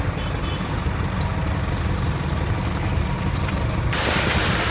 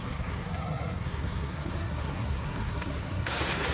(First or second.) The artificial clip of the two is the second